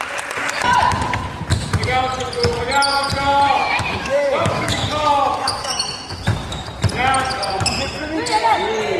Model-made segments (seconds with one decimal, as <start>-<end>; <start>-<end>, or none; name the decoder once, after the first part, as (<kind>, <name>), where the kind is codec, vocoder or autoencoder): 1.5-2.0 (autoencoder, DAC-VAE); 3.6-6.7

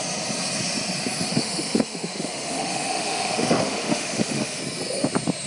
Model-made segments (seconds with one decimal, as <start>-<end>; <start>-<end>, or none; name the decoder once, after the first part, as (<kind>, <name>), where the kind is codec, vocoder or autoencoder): 1.3-4.6 (autoencoder, DAC-VAE)

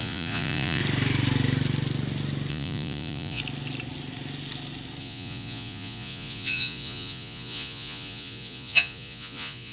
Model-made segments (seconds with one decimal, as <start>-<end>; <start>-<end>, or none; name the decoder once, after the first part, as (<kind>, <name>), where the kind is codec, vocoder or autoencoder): 0.0-0.8 (vocoder, Vocos); 2.5-3.4; 5.0-9.7

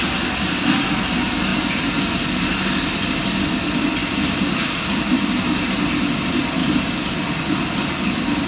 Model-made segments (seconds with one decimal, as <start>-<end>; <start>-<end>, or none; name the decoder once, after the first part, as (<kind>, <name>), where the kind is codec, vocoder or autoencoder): 1.5-2.0 (vocoder, BigVGAN v2); 4.2-5.9; 6.6-7.2

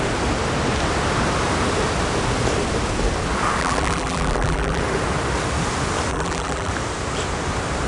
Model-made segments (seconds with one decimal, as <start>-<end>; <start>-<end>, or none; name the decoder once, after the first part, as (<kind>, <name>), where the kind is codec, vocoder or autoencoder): 3.6-4.8 (vocoder, BigVGAN v2); 6.1-6.7